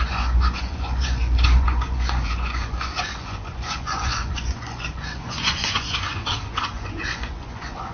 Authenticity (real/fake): fake